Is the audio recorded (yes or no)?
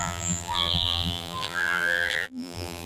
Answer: no